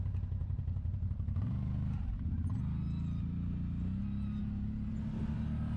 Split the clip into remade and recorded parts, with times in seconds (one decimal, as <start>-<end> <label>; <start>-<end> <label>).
0.0-0.4 recorded; 0.4-2.1 remade; 2.1-4.4 recorded; 4.4-4.9 remade; 4.9-5.8 recorded